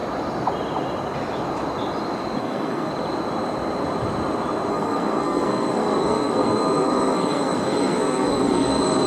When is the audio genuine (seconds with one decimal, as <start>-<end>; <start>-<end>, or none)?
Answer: 0.0-2.4; 2.9-4.7